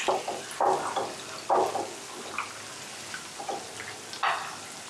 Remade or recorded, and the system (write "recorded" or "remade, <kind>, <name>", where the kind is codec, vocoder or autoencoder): recorded